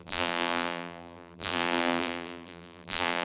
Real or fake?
fake